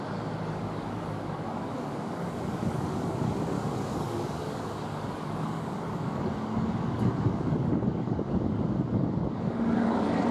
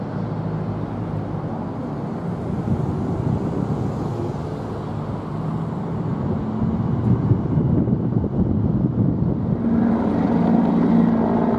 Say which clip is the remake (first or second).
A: first